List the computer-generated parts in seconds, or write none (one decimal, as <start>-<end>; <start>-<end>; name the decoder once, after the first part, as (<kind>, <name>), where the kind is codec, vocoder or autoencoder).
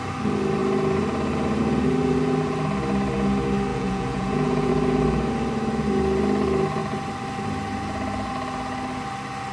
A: 3.7-4.7 (vocoder, Vocos)